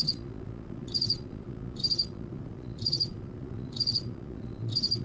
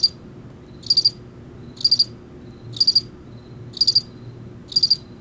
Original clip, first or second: second